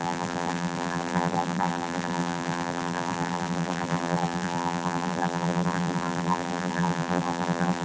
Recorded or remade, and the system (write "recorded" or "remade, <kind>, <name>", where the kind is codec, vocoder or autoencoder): remade, vocoder, BigVGAN v2